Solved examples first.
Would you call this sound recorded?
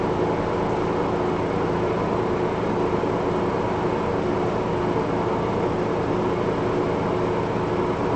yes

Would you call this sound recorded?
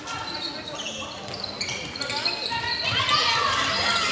yes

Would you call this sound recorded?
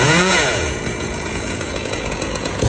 no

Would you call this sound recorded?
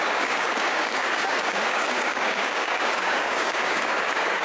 no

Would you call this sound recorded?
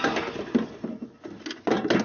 yes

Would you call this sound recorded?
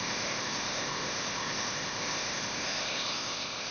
no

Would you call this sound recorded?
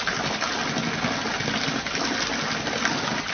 yes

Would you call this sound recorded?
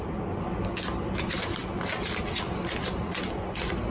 yes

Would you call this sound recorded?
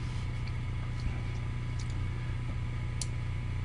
yes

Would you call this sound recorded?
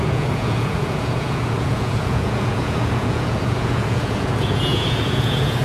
no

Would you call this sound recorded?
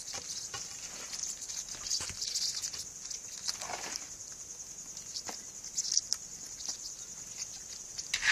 yes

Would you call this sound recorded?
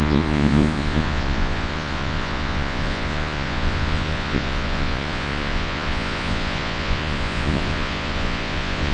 no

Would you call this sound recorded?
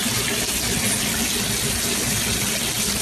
yes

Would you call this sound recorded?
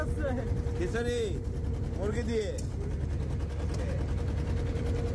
yes